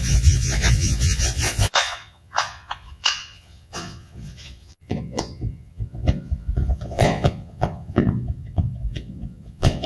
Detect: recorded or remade remade